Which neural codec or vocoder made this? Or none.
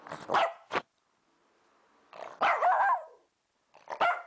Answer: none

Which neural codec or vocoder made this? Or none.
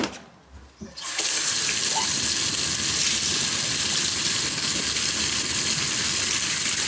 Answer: none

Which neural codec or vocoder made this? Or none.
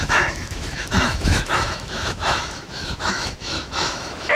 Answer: autoencoder, DAC-VAE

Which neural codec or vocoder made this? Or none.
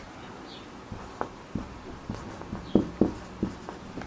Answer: none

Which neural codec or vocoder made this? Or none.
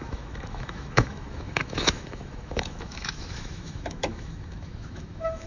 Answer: autoencoder, DAC-VAE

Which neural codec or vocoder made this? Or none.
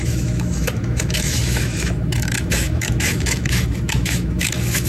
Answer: autoencoder, DAC-VAE